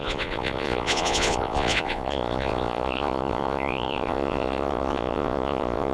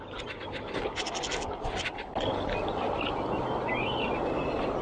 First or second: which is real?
second